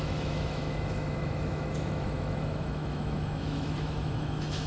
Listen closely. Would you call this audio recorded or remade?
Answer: remade